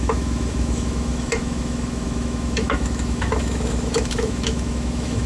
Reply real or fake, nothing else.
fake